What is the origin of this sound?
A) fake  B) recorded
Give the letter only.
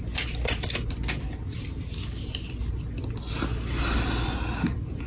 B